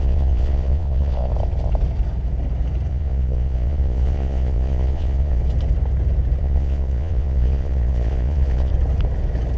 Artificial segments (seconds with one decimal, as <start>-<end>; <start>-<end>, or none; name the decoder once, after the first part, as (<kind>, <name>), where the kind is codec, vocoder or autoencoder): 0.0-1.3 (vocoder, Vocos); 2.9-5.4; 6.4-8.7

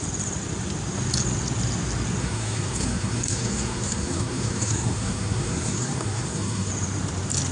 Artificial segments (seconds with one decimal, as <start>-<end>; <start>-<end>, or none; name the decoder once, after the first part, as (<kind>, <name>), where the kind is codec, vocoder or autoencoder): 2.2-6.7 (codec, SNAC)

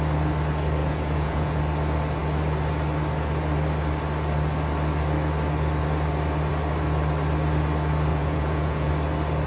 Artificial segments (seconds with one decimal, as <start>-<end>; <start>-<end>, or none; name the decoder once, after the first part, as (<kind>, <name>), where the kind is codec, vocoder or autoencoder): 0.8-1.6 (vocoder, Vocos); 8.1-8.9

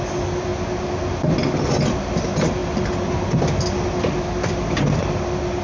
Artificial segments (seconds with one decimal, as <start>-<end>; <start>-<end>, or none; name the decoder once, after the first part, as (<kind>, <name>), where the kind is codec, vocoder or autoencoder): none